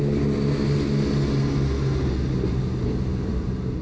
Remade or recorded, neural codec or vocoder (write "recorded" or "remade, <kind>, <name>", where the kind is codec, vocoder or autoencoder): recorded